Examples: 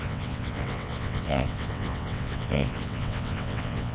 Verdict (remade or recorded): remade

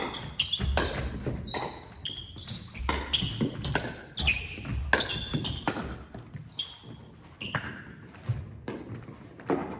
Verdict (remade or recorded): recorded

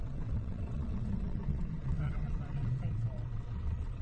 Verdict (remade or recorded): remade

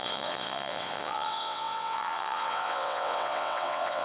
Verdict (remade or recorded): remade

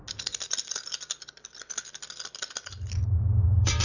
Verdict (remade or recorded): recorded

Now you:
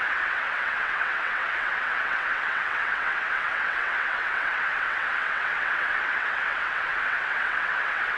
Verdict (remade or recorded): remade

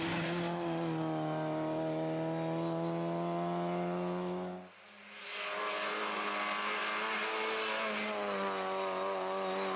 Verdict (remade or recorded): recorded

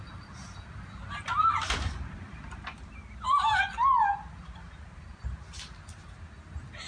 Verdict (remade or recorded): recorded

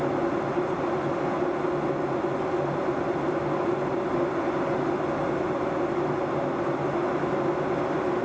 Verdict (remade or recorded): recorded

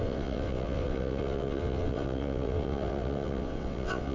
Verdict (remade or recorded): remade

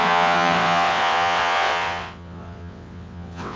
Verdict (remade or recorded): remade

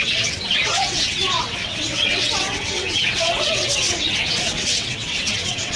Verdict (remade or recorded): remade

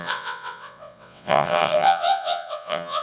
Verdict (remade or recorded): remade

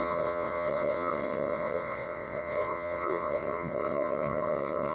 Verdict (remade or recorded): remade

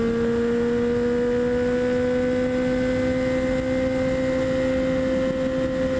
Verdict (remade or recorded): recorded